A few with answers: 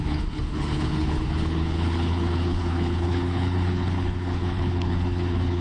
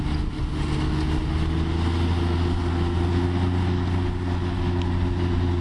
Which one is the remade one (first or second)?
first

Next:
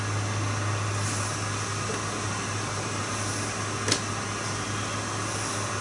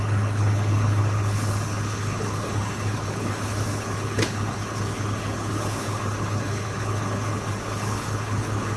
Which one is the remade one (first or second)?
second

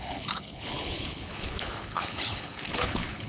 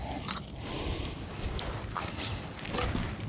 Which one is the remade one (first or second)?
first